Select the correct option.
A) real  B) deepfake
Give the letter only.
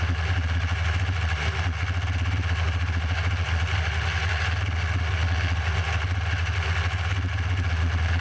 A